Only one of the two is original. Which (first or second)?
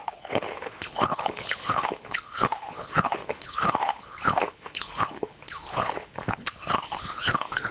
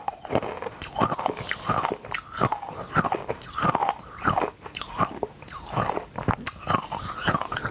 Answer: second